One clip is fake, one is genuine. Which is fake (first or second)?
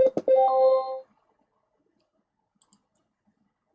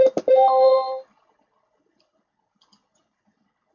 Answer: second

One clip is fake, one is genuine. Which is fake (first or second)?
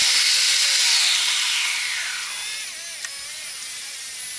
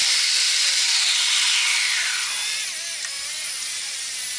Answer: second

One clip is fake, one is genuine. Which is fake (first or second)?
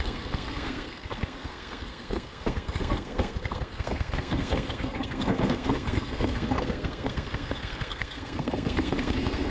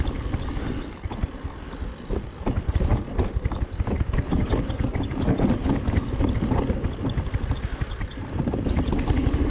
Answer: first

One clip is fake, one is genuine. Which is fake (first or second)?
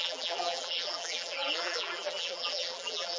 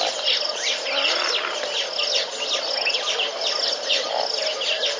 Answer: first